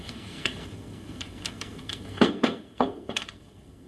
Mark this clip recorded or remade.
remade